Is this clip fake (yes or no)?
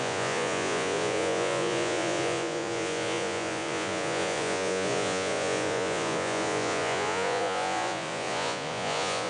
yes